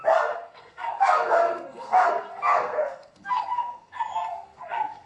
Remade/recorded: remade